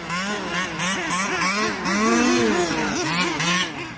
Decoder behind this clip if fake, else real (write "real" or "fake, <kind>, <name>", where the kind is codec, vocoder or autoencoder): real